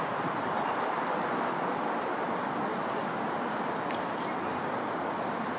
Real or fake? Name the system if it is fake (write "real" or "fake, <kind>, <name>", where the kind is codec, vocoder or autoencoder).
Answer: real